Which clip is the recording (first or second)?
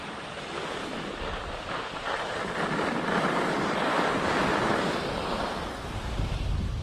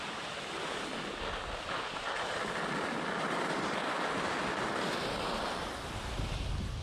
second